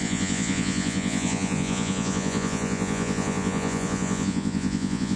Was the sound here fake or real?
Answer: fake